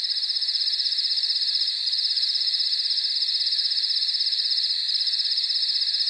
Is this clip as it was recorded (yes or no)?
yes